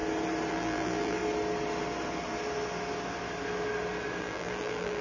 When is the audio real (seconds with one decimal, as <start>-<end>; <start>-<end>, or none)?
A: 0.0-0.5; 1.2-4.2